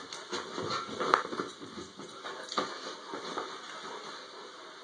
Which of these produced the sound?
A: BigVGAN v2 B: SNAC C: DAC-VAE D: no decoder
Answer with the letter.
D